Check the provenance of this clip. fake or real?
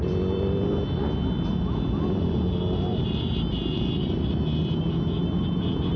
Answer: real